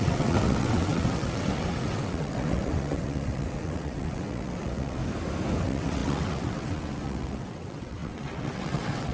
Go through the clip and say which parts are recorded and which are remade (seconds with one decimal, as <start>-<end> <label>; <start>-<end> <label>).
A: 0.0-5.0 remade; 5.0-5.6 recorded; 5.6-9.1 remade